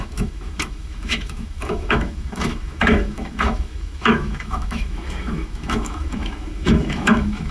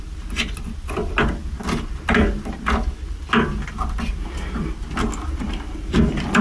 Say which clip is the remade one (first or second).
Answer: first